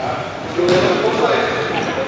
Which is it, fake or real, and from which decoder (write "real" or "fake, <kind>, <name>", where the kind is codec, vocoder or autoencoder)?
real